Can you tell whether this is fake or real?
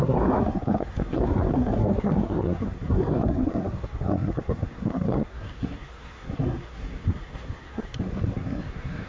fake